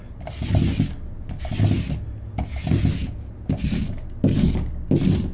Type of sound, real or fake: real